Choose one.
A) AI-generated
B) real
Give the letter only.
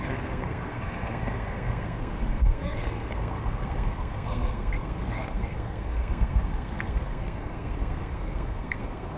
A